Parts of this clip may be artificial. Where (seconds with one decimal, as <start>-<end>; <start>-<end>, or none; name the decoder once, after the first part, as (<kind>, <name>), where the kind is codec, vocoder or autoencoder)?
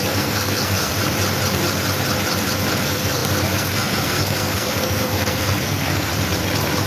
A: 0.0-0.9 (codec, SNAC); 2.7-6.1